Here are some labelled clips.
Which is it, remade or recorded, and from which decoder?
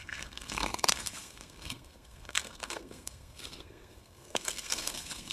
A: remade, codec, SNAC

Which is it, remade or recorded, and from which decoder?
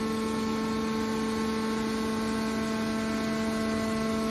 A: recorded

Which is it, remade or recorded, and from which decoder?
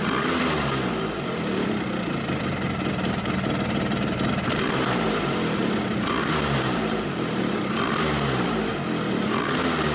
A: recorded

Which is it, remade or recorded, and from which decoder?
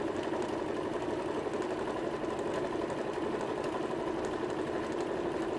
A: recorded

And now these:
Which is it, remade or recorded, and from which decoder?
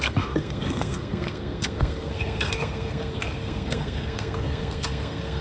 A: remade, codec, SNAC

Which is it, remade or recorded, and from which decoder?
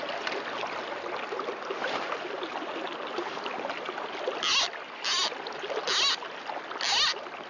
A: recorded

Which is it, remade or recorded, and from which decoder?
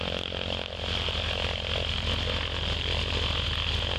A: recorded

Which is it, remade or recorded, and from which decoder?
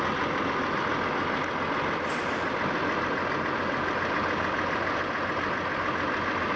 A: recorded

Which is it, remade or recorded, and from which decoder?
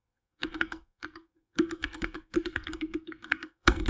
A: remade, codec, SNAC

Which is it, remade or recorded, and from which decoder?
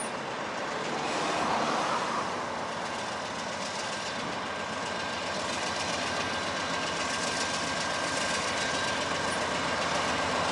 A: recorded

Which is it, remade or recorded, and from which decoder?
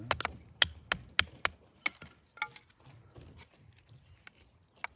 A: recorded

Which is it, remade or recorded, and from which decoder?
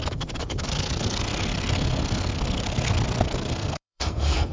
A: remade, codec, SNAC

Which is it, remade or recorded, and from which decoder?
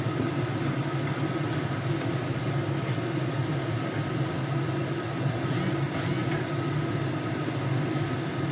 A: recorded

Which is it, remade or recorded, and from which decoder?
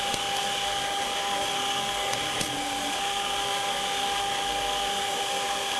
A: remade, codec, SNAC